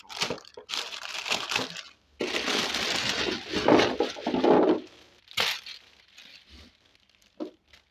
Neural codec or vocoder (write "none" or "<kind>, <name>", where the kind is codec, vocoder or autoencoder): none